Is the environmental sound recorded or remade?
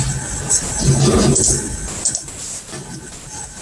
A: recorded